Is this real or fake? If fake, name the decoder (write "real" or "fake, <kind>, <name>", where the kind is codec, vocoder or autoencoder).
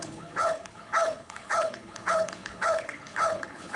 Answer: fake, codec, HILCodec